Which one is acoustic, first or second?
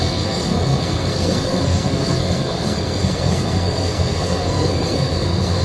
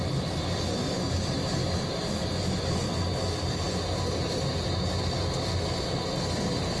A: second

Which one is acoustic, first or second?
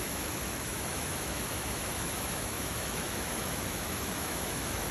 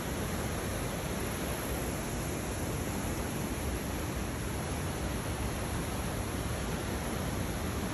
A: second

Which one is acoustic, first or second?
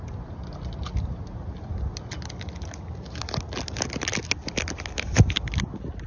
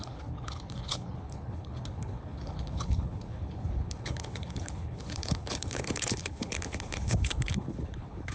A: first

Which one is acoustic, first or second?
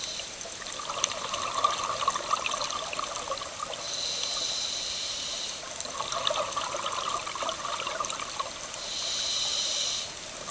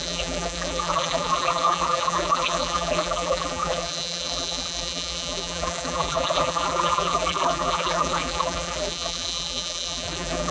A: first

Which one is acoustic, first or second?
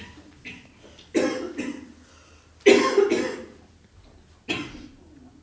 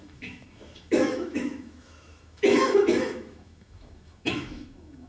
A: first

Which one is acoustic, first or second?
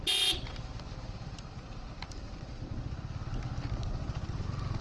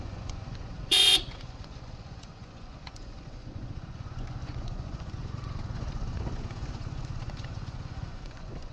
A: first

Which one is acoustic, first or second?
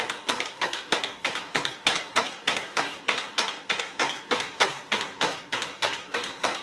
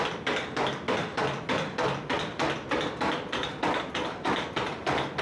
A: second